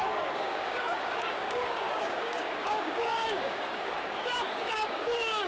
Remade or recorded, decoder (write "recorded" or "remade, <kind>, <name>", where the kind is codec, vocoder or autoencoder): remade, codec, DAC